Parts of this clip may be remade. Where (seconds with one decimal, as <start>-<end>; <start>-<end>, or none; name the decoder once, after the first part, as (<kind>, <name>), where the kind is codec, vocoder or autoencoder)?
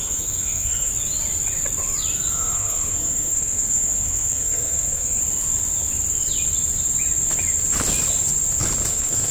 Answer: 0.0-0.9 (codec, SNAC); 2.3-5.2; 8.9-9.3